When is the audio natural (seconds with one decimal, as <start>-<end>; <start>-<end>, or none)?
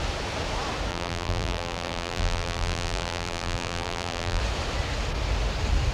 0.0-0.9; 4.4-5.9